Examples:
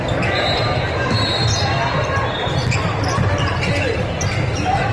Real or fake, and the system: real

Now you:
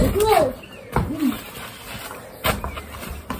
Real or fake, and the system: real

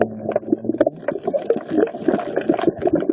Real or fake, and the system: real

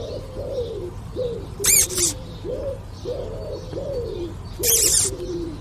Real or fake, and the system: fake, vocoder, BigVGAN v2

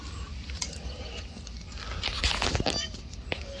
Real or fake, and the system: real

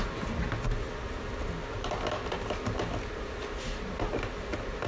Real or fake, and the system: real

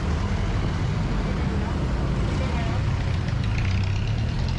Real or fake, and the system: real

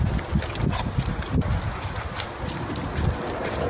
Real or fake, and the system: real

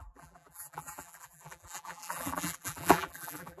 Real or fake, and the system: fake, vocoder, BigVGAN v2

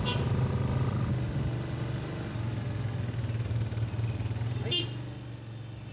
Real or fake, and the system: real